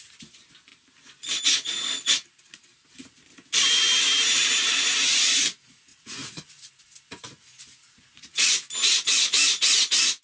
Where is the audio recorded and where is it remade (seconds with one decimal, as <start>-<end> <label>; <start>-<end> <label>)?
0.0-5.9 recorded; 5.9-6.7 remade; 6.7-7.5 recorded; 7.5-8.5 remade; 8.5-10.2 recorded